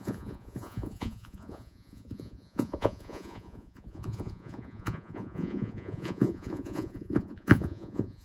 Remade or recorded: remade